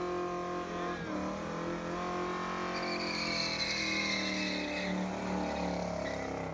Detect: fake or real real